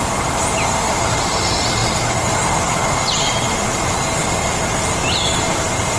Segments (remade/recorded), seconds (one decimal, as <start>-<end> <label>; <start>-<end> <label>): 0.0-1.8 remade; 1.8-5.4 recorded; 5.4-6.0 remade